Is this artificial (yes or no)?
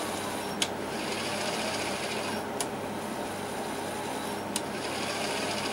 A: no